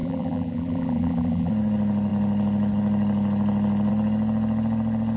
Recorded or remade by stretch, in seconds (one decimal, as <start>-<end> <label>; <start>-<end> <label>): 0.0-1.5 remade; 1.5-5.2 recorded

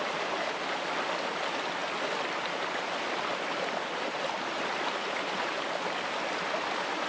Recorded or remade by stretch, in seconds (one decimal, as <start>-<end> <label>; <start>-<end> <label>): 0.0-7.1 recorded